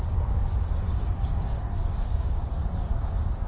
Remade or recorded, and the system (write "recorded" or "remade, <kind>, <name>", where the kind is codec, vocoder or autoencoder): remade, codec, DAC